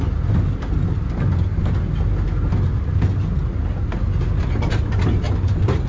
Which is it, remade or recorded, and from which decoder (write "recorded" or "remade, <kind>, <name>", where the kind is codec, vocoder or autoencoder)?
recorded